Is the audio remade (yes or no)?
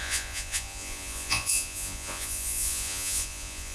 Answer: yes